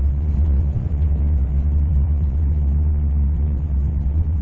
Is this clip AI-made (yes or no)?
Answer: yes